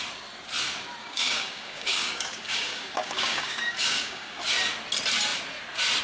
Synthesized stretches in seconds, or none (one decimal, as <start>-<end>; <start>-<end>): 1.0-4.4

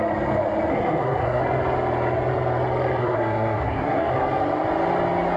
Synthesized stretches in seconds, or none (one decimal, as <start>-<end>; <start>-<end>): 0.7-1.4; 3.0-4.1

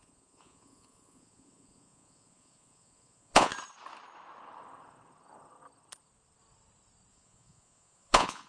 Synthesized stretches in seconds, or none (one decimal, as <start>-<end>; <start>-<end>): 0.0-3.5; 7.1-8.5

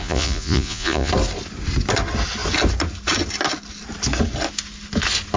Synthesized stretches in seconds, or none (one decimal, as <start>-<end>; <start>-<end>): 0.0-1.1

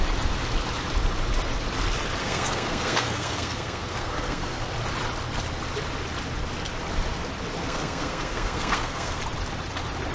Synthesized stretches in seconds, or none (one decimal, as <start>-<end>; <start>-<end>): 2.2-4.7; 7.6-9.2